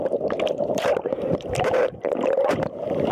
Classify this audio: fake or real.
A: fake